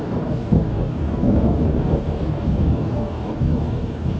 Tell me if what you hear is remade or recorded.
remade